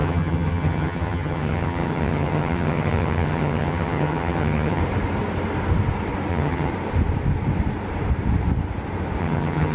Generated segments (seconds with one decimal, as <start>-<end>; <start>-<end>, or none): 0.0-4.8; 6.3-6.7; 9.2-9.7